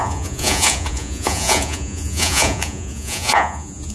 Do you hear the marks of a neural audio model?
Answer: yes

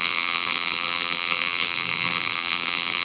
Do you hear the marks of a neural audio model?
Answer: yes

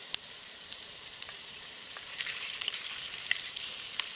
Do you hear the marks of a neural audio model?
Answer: yes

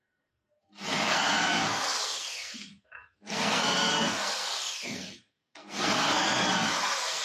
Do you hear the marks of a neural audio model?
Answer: yes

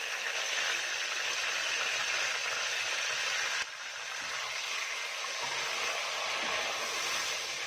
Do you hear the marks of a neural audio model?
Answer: no